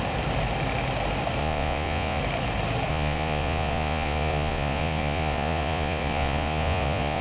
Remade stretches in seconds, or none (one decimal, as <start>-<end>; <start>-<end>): 1.4-2.2; 2.9-7.2

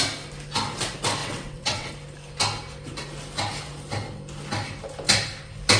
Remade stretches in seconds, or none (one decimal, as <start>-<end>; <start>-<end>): 1.2-1.9